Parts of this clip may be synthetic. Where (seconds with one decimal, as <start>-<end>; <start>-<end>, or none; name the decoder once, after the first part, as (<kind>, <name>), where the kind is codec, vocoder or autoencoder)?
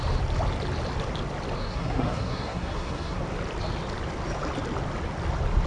1.6-3.2 (codec, SNAC)